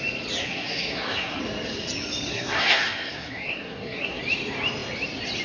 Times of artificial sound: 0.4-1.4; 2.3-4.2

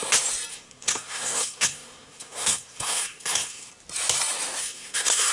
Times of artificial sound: 0.5-3.7; 4.6-5.3

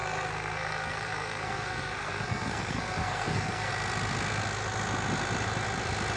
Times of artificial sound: 0.0-3.7

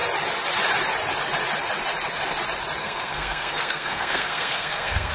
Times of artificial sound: 2.8-5.1

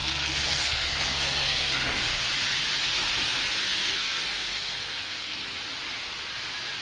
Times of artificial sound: 0.0-2.3; 3.6-5.6

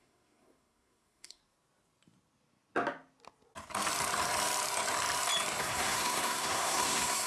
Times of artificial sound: 0.0-1.4; 5.6-7.3

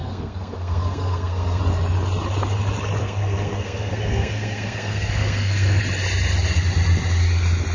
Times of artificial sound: 0.0-1.6; 3.0-5.8

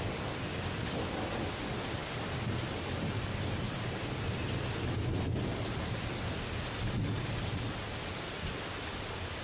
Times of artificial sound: none